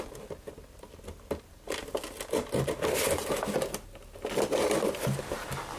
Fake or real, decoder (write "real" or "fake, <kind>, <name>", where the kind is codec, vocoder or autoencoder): real